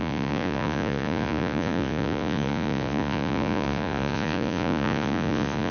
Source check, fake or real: fake